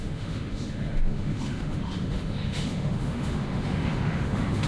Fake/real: fake